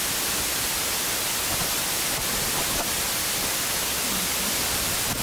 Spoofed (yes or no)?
no